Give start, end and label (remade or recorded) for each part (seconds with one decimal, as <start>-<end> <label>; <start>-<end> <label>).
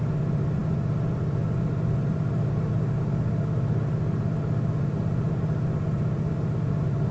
0.0-7.1 recorded